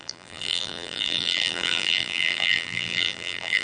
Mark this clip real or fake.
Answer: fake